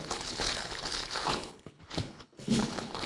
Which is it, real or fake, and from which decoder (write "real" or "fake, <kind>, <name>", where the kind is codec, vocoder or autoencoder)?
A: fake, codec, HILCodec